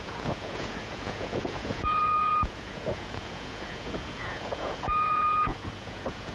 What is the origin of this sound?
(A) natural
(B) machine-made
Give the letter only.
B